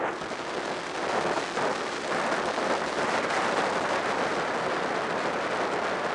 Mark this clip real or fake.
real